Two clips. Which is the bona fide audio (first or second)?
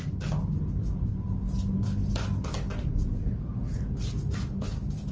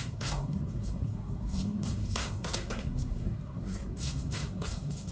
first